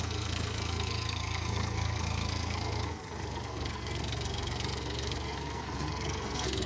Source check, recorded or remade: remade